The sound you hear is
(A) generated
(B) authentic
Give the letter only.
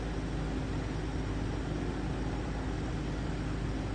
B